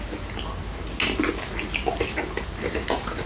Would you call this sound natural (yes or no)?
yes